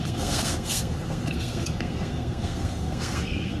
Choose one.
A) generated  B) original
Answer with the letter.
A